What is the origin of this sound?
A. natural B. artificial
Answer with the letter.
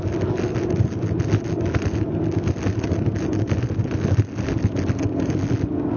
A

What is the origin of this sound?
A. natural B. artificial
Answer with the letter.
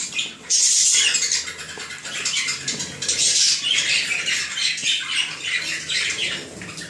A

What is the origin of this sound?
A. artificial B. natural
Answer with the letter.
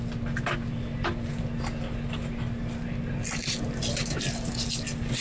B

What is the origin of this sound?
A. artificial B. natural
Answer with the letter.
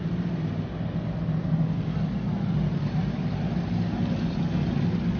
B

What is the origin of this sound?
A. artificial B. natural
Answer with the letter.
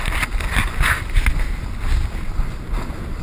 B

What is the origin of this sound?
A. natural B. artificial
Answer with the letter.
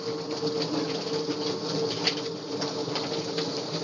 A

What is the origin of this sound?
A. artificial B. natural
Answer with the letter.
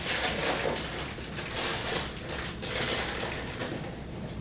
B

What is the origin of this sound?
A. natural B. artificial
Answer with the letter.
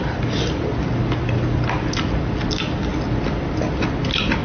A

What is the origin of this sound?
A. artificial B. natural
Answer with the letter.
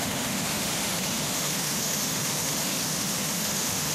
A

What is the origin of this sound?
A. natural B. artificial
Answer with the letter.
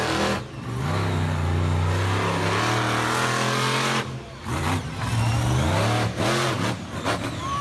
A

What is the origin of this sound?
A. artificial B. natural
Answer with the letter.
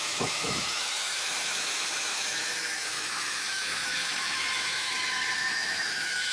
A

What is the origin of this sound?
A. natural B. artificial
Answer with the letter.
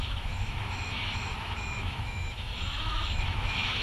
B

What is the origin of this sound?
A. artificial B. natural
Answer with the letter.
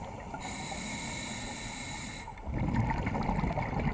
B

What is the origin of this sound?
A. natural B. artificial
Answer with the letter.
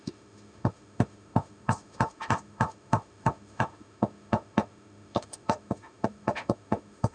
B